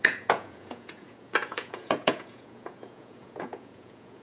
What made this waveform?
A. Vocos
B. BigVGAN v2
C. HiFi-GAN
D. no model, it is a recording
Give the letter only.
A